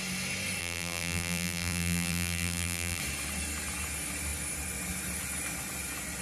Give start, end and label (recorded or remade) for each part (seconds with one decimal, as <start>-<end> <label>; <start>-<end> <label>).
0.0-0.6 recorded; 0.6-3.0 remade; 3.0-6.2 recorded